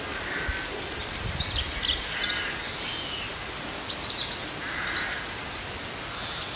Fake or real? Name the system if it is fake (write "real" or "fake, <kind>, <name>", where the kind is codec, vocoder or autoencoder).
real